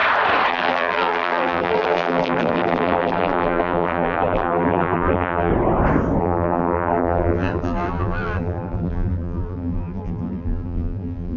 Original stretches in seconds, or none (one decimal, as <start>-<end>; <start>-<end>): 0.0-0.5; 5.5-6.2